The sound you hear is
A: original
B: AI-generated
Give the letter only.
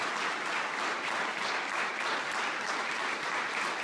A